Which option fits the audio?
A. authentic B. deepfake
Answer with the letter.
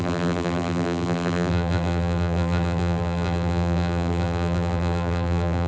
B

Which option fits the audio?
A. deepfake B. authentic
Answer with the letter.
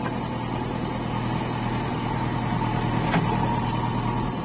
B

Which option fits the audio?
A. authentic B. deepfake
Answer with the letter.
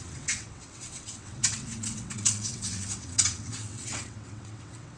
B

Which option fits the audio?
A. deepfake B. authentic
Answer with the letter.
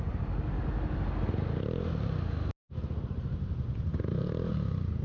B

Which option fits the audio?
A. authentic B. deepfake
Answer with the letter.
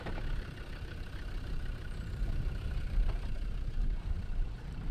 B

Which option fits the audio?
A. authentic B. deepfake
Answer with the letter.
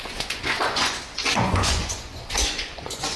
B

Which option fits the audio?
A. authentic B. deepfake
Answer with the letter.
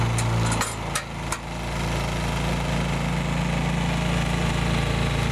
A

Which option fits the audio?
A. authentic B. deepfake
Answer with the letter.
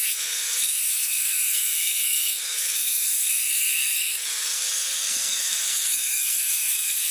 B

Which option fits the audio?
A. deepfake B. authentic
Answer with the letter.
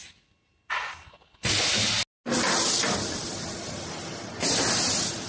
B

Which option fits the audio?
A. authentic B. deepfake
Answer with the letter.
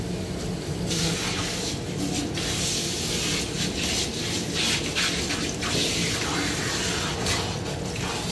A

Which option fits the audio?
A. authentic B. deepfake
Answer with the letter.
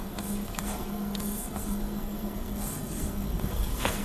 B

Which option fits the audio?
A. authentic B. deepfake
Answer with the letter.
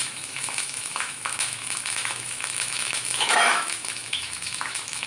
B